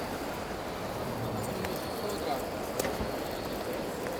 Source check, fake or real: real